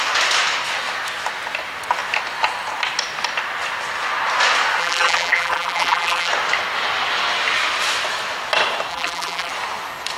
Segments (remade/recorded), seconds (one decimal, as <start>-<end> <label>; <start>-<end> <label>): 0.0-4.8 recorded; 4.8-6.3 remade; 6.3-8.9 recorded; 8.9-9.5 remade; 9.5-10.2 recorded

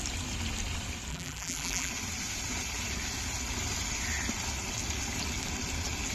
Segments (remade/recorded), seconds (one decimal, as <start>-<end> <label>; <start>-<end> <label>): 0.0-1.1 recorded; 1.1-1.9 remade; 1.9-6.1 recorded

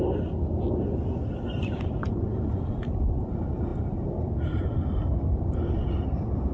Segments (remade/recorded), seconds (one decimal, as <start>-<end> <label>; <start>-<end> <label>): 0.0-6.5 recorded

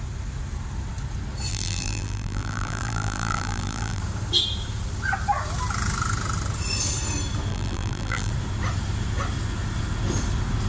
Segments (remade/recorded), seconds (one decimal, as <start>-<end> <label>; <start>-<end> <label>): 0.0-1.5 recorded; 1.5-4.0 remade; 4.0-7.5 recorded; 7.5-8.3 remade; 8.3-10.7 recorded

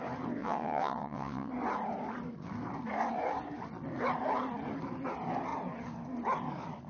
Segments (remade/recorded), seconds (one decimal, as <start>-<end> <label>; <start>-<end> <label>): 0.0-0.4 recorded; 0.4-1.5 remade; 1.5-6.9 recorded